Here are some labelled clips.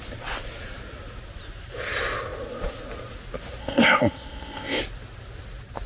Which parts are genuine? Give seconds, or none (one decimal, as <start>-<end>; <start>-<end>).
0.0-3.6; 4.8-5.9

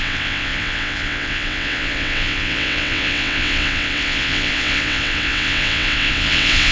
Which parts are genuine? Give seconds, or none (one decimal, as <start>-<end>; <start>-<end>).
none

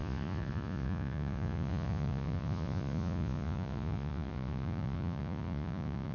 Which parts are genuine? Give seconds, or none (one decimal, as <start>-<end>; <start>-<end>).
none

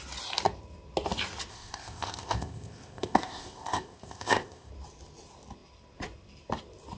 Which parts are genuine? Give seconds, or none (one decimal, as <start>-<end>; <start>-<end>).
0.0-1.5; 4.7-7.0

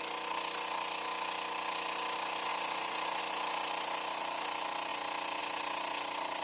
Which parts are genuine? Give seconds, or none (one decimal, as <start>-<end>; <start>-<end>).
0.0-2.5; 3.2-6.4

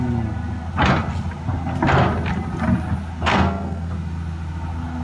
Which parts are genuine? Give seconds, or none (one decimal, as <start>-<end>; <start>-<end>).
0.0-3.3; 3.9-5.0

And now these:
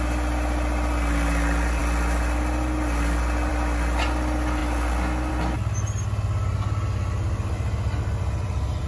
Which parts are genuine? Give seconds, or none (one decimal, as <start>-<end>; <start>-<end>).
0.0-8.9

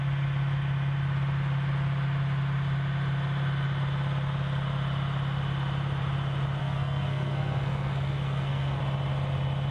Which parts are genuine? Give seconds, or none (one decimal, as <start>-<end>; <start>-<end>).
0.0-6.6; 8.8-9.7